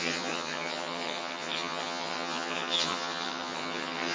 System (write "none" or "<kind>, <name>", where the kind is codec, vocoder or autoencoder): vocoder, HiFi-GAN